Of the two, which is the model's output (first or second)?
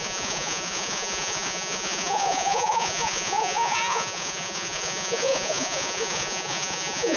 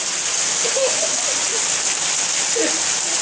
first